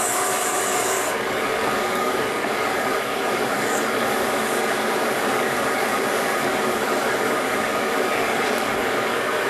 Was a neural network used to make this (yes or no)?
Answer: yes